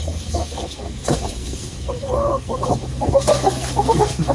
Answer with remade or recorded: remade